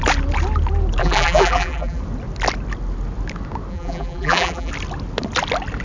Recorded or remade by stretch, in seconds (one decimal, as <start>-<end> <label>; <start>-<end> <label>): 0.0-1.0 recorded; 1.0-2.0 remade; 2.0-3.7 recorded; 3.7-4.7 remade; 4.7-5.8 recorded